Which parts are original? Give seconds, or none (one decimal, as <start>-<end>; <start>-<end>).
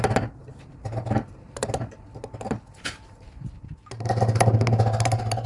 0.0-0.4; 3.7-5.5